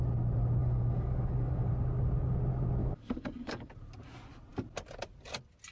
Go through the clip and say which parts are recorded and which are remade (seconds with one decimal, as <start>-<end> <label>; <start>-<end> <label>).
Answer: 0.0-0.6 recorded; 0.6-1.7 remade; 1.7-2.8 recorded; 2.8-3.7 remade; 3.7-5.7 recorded